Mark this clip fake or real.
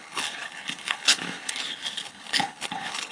fake